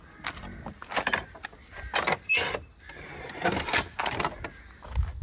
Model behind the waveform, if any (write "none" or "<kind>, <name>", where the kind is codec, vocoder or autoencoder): none